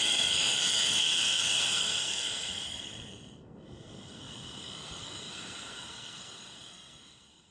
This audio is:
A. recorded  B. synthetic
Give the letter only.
B